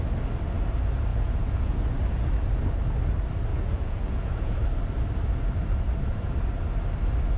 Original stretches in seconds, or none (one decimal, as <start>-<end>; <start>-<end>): 0.0-1.1; 1.7-3.5; 4.6-7.4